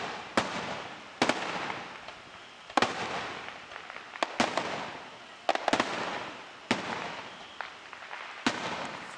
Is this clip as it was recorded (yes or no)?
yes